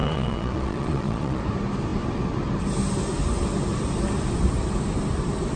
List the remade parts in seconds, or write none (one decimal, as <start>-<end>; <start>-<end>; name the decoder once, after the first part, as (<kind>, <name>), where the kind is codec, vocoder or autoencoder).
0.0-1.4 (vocoder, Vocos)